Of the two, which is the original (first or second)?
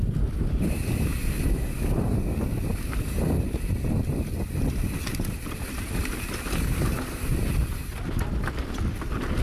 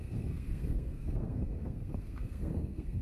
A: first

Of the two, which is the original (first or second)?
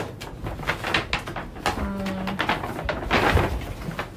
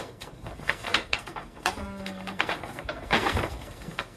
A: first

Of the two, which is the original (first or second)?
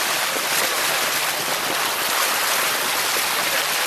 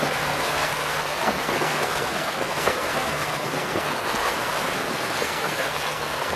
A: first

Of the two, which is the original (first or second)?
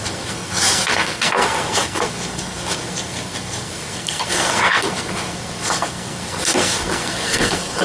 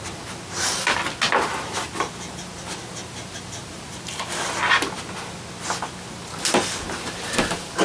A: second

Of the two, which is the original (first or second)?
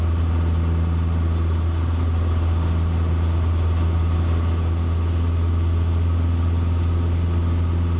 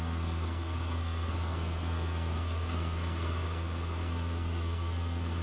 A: first